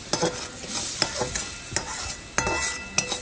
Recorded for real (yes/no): yes